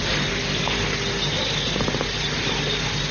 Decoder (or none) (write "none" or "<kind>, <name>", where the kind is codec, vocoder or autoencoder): none